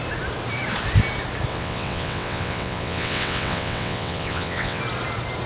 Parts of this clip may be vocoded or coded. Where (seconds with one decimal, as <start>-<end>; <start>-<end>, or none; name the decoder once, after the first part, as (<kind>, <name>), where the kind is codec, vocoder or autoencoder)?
1.5-4.8 (vocoder, WaveNeXt)